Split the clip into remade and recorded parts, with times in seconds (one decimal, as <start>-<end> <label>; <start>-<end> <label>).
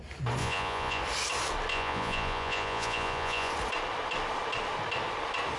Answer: 0.0-0.4 recorded; 0.4-1.0 remade; 1.0-1.7 recorded; 1.7-3.5 remade; 3.5-5.6 recorded